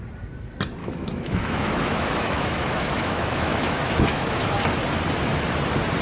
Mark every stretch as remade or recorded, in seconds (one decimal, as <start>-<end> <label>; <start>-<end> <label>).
0.0-0.8 recorded; 0.8-4.4 remade; 4.4-6.0 recorded